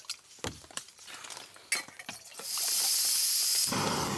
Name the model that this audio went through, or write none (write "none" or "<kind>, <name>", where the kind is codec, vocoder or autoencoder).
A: none